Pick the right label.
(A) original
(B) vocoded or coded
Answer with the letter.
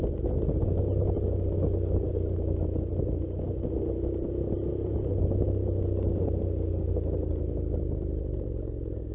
A